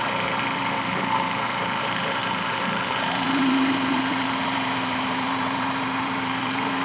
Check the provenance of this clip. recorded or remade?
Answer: remade